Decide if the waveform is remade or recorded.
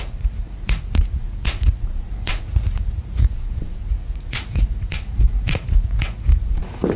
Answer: remade